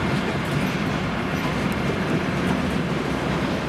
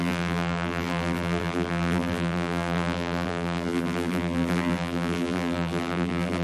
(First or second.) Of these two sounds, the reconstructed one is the second